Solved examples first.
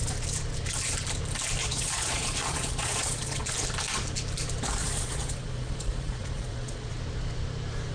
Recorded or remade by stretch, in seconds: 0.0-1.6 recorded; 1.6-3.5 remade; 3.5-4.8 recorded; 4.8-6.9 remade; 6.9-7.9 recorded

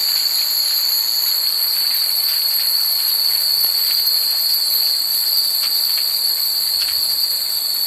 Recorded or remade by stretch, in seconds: 0.0-3.4 remade; 3.4-5.4 recorded; 5.4-7.9 remade

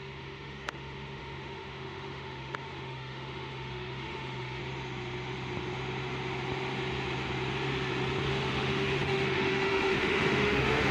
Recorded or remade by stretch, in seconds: 0.0-4.6 remade; 4.6-8.3 recorded; 8.3-10.9 remade

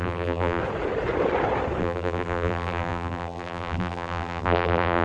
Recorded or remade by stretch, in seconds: 0.0-0.6 remade; 0.6-1.8 recorded; 1.8-5.0 remade

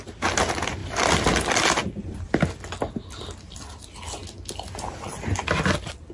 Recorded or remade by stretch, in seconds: 0.0-6.1 recorded